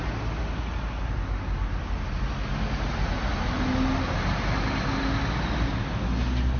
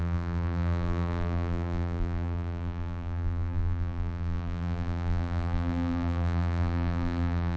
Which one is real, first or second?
first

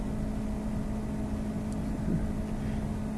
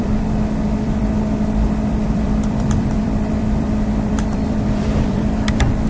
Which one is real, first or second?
first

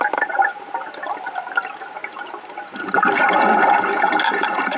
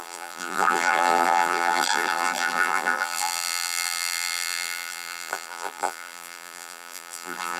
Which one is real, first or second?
first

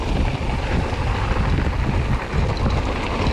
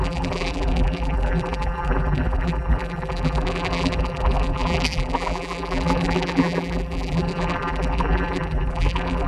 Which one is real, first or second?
first